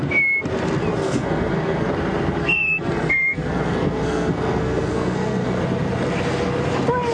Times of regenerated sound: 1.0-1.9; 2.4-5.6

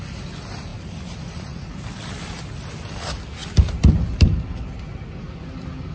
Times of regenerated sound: 0.7-2.1

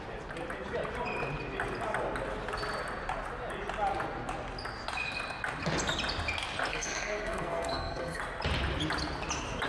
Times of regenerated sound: 6.7-8.2

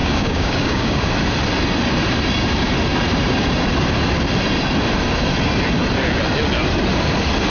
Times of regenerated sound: 0.0-1.1

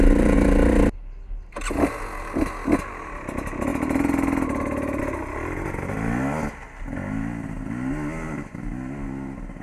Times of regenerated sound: none

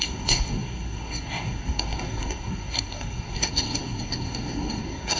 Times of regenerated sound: 0.0-5.2

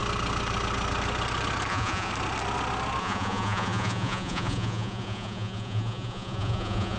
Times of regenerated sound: 1.7-2.1; 3.0-7.0

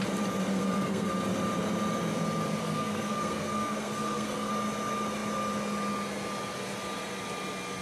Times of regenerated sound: 0.5-1.1; 2.6-4.5